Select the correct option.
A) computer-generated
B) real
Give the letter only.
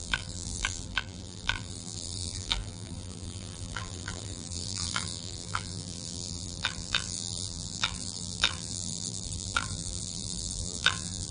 A